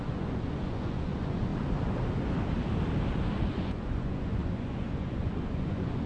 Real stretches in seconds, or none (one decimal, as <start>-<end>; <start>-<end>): 1.5-3.4